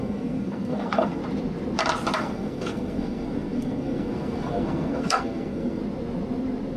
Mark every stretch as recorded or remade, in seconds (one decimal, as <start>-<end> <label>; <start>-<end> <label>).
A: 0.0-1.2 remade; 1.2-2.2 recorded; 2.2-5.8 remade; 5.8-6.8 recorded